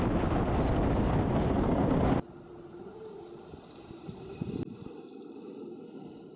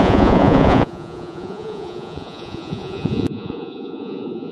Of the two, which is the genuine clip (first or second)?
first